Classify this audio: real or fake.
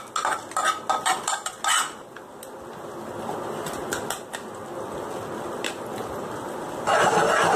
real